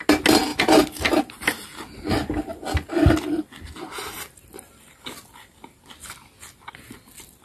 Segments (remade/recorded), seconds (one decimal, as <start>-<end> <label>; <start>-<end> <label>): 0.0-0.5 recorded; 0.5-1.2 remade; 1.2-7.4 recorded